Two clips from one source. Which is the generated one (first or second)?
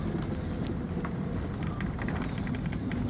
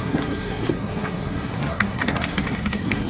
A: second